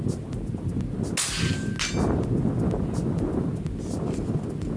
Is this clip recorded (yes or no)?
yes